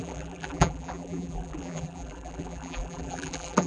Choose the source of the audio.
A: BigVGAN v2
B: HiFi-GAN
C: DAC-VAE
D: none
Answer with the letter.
A